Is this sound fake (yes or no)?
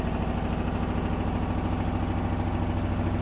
no